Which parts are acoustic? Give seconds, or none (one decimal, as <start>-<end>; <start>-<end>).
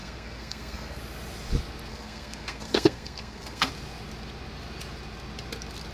1.0-1.9; 3.7-5.9